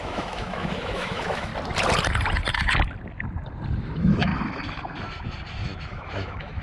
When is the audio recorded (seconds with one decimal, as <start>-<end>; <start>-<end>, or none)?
1.5-3.8; 4.3-5.5